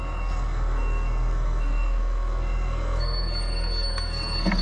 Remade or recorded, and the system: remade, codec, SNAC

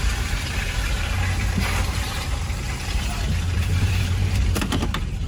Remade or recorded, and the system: remade, vocoder, BigVGAN v2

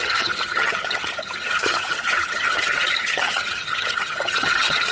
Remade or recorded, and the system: remade, vocoder, HiFi-GAN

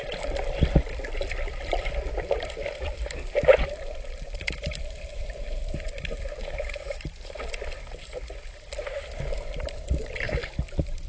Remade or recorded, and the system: remade, vocoder, BigVGAN v2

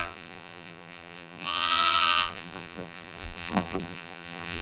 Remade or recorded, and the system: remade, vocoder, BigVGAN v2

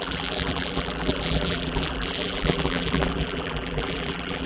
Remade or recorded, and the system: remade, vocoder, BigVGAN v2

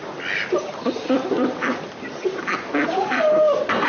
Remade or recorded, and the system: remade, vocoder, BigVGAN v2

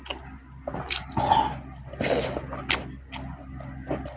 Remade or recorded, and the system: recorded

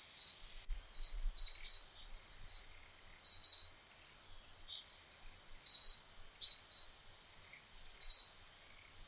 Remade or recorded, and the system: recorded